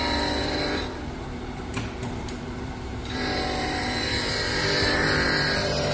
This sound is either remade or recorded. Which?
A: remade